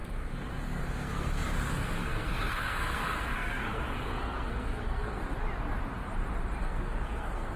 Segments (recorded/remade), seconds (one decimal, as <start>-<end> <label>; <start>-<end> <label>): 0.0-5.2 remade; 5.2-6.6 recorded; 6.6-7.6 remade